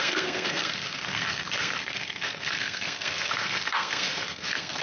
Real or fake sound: fake